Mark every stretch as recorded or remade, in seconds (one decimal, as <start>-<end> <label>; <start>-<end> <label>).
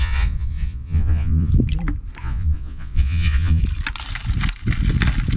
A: 0.0-1.5 remade; 1.5-2.2 recorded; 2.2-3.6 remade; 3.6-5.4 recorded